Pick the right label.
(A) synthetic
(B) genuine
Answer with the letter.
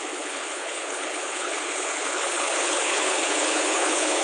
A